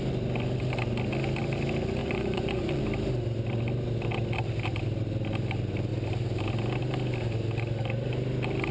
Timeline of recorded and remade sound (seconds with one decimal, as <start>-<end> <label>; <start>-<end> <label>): 0.0-2.0 recorded; 2.0-2.8 remade; 2.8-8.7 recorded